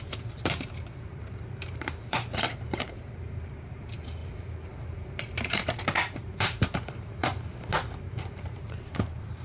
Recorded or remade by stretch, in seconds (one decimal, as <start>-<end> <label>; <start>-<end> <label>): 0.0-7.7 remade; 7.7-8.3 recorded; 8.3-9.4 remade